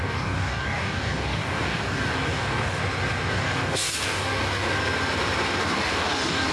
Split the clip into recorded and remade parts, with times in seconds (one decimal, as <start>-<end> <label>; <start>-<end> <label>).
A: 0.0-2.8 remade; 2.8-3.3 recorded; 3.3-4.8 remade; 4.8-5.6 recorded; 5.6-6.5 remade